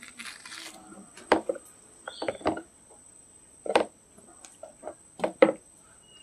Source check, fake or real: fake